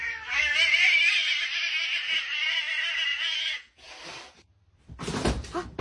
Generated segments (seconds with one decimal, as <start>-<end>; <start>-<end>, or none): 3.1-3.9